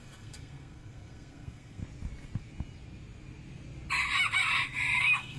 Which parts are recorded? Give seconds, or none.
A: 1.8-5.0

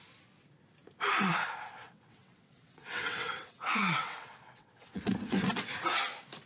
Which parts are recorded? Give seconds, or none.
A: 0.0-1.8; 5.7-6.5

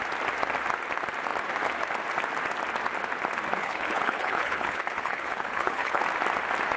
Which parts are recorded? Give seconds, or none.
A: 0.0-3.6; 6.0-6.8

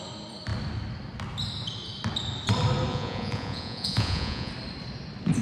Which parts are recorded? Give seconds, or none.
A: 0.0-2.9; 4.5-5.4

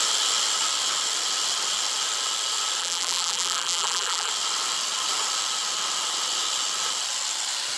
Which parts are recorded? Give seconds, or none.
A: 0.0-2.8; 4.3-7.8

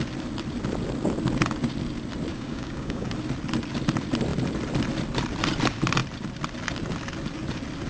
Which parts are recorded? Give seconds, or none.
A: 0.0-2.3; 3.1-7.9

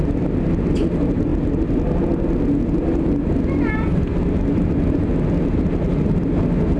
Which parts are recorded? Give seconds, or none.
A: 0.0-6.8

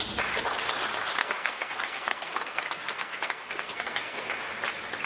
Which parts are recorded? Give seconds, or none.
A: 0.0-1.2; 4.3-5.1